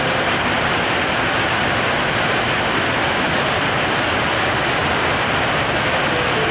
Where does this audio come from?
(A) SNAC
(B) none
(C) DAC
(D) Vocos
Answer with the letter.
B